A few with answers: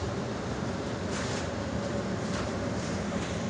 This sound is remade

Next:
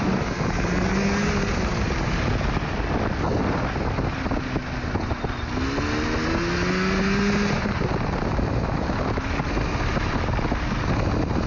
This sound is recorded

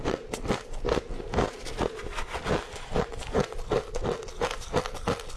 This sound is recorded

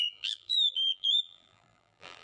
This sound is remade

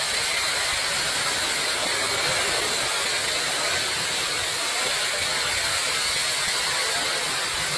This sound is recorded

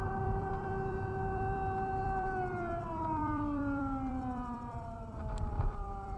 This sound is remade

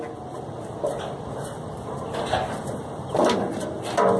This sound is recorded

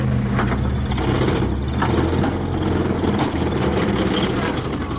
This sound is recorded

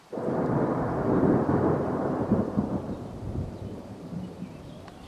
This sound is remade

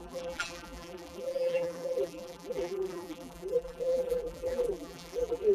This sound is remade